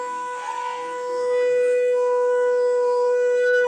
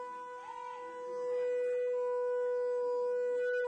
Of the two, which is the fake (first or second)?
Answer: first